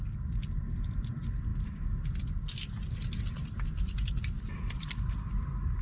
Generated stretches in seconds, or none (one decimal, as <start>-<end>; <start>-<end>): none